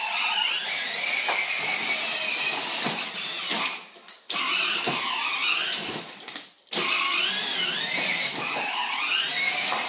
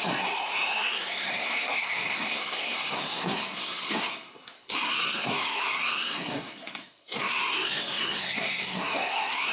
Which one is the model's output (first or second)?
second